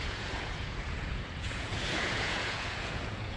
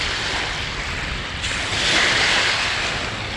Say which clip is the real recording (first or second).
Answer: second